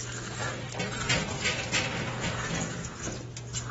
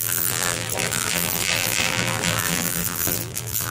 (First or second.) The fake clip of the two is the second